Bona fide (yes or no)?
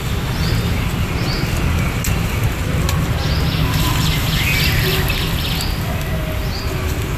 yes